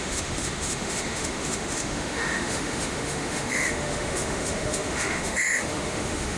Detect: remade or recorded remade